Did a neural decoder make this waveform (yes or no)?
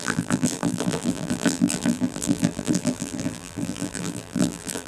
yes